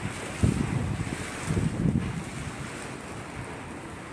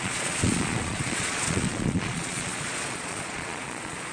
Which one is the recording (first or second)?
first